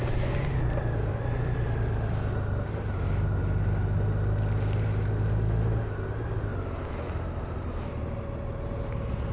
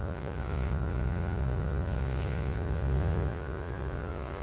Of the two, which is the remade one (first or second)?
second